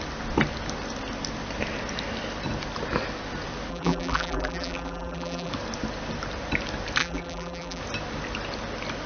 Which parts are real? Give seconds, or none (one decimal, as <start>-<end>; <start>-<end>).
0.0-3.7; 5.5-7.0; 7.8-9.1